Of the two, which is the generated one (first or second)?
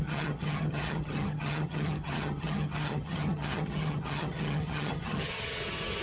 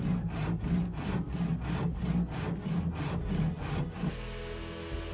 first